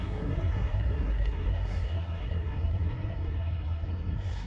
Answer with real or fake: fake